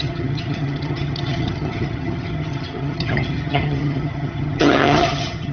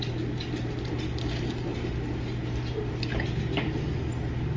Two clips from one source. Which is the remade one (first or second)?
first